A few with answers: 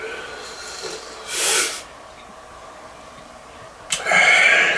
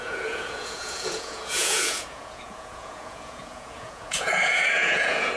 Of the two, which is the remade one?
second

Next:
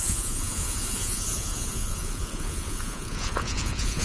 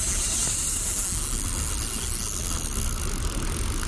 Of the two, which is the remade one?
first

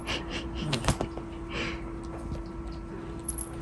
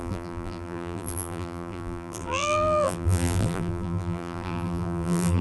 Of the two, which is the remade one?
second